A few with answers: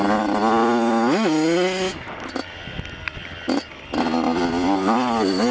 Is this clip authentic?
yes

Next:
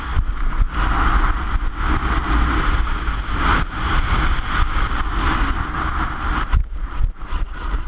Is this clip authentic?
yes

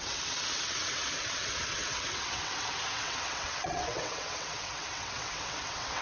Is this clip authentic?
no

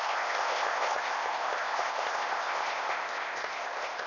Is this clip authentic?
no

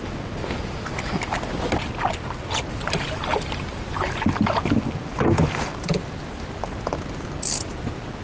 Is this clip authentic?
yes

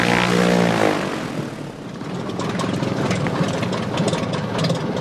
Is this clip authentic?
yes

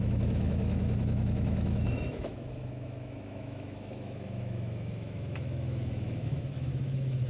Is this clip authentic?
no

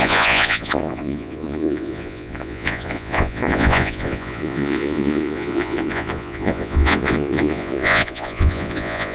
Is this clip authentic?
no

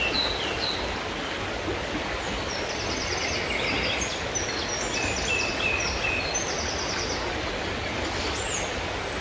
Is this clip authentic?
yes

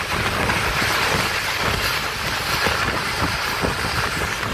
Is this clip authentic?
yes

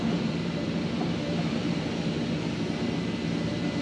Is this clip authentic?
yes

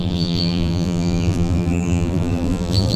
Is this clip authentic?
no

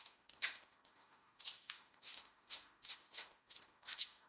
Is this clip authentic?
no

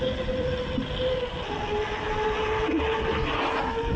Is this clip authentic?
yes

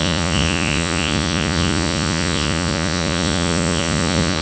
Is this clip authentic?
no